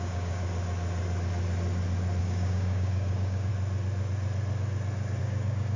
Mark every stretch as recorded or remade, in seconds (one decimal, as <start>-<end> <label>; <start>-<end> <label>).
0.0-0.4 remade; 0.4-2.2 recorded; 2.2-3.5 remade; 3.5-5.2 recorded; 5.2-5.8 remade